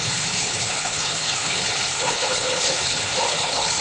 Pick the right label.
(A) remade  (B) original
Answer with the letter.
A